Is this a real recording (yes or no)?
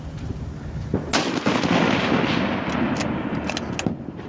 yes